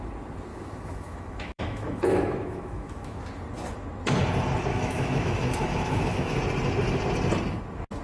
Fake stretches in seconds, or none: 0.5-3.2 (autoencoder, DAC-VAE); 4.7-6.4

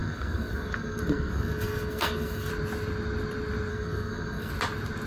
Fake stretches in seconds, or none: 0.0-2.5 (codec, SNAC); 3.7-4.5

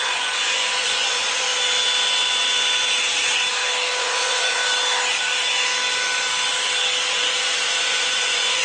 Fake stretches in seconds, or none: 0.0-1.5 (vocoder, Vocos); 4.0-4.6; 7.1-8.6